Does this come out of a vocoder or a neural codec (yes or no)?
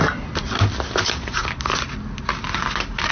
no